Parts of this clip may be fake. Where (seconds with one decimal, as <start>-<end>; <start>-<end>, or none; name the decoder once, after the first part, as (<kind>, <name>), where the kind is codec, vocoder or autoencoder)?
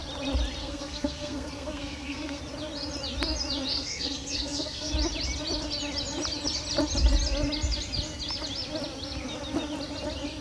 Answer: 0.6-2.4 (codec, SNAC); 3.7-4.9